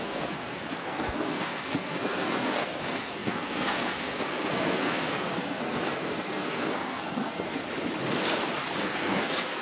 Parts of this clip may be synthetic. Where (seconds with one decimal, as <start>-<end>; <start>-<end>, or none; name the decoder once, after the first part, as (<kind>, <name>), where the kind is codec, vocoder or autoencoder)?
0.0-7.6 (codec, SNAC); 8.8-9.6